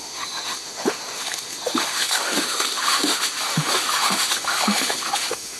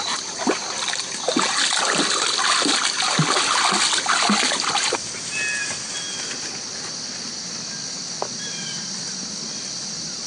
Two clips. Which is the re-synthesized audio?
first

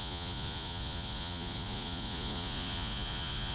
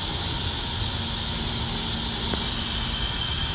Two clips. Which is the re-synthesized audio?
first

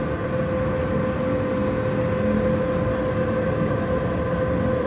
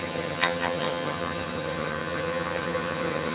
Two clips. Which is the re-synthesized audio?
second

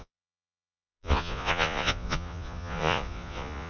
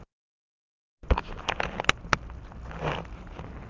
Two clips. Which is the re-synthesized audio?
first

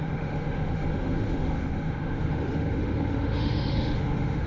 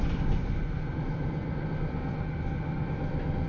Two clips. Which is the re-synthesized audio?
first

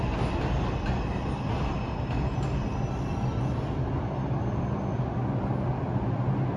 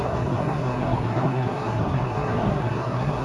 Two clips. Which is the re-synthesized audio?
second